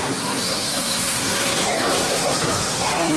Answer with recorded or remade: remade